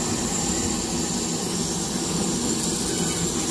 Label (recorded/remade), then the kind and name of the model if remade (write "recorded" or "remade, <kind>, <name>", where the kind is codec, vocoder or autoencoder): recorded